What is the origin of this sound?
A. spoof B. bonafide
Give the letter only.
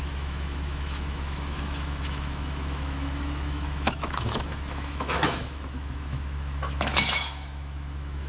A